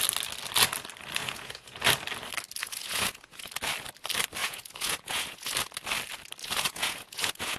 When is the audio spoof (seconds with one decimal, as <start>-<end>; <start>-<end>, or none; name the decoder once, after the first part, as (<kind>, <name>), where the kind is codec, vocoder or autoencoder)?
1.2-1.8 (vocoder, Vocos); 2.6-3.5; 4.4-5.5; 6.4-7.6

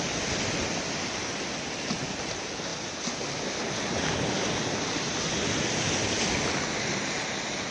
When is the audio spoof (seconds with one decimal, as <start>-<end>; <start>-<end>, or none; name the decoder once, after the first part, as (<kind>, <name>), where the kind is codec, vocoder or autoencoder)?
none

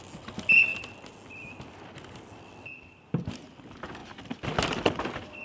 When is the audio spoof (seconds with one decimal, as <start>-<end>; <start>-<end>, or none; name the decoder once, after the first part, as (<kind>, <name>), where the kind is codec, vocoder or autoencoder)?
none

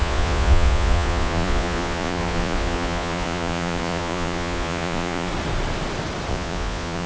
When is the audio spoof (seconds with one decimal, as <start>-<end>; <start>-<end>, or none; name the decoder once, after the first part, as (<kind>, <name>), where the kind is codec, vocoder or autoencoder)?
0.0-5.3 (vocoder, Vocos); 6.3-7.1

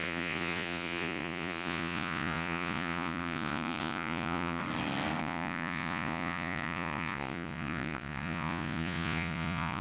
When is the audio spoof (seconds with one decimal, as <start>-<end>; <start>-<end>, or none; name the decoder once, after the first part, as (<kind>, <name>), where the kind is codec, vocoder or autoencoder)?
0.0-4.6 (vocoder, Vocos); 5.2-9.8

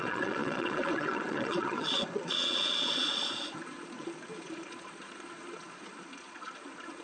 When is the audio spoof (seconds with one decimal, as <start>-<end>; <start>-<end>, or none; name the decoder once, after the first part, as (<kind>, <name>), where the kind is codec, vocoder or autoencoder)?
0.0-7.0 (vocoder, Vocos)